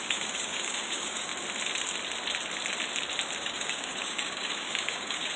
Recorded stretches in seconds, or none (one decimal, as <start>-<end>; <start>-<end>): 1.3-3.4